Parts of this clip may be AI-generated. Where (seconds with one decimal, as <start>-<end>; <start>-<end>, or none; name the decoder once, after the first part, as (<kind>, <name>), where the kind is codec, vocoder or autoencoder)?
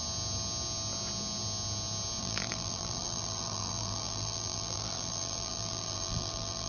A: 2.2-6.7 (vocoder, BigVGAN v2)